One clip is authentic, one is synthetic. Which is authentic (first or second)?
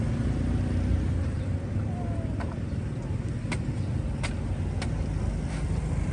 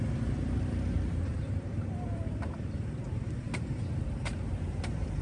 first